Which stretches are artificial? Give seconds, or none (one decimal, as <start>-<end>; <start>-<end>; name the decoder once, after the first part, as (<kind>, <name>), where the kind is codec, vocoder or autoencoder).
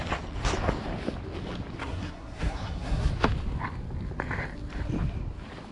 1.8-3.1 (codec, SNAC)